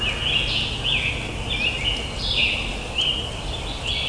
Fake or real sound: real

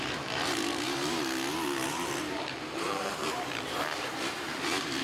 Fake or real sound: fake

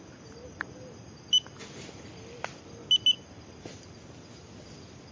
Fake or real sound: real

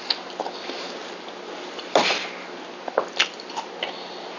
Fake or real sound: real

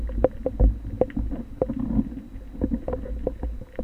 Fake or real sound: real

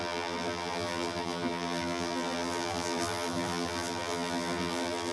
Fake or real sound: fake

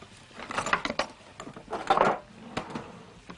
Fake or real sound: real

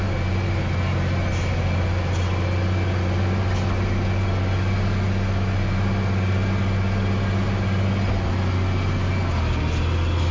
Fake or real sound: real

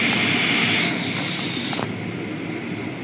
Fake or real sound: real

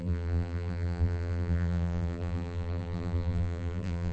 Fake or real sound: fake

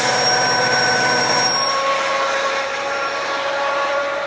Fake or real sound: fake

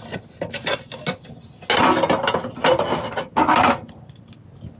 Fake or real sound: real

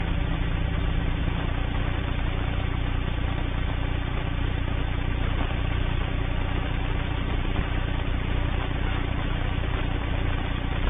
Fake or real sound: real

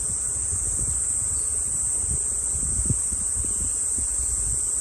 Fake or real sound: real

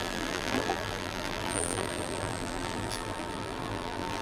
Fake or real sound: fake